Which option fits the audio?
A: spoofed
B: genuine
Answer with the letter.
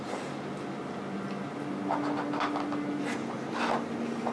B